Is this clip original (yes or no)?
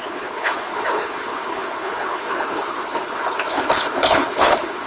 no